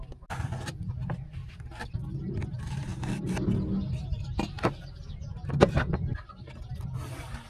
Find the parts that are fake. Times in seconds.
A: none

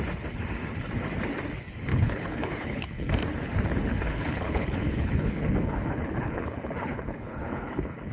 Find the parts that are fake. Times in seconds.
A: 1.9-3.1 (codec, HILCodec); 3.9-8.1

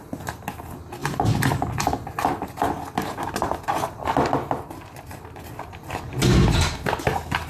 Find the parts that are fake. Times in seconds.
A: none

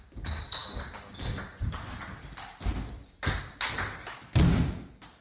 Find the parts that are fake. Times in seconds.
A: none

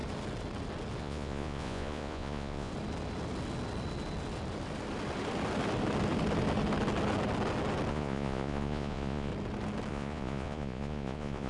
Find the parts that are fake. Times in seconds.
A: 1.0-2.7 (vocoder, Vocos); 7.9-9.3; 9.9-11.5